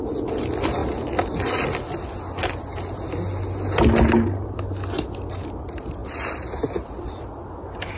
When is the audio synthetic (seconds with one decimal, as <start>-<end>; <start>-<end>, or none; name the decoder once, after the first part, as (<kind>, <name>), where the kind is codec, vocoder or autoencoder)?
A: none